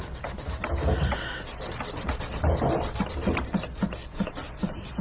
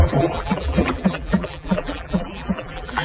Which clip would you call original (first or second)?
first